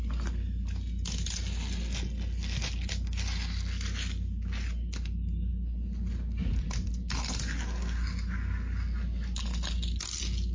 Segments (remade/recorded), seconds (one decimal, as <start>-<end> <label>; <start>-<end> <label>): 0.0-10.5 recorded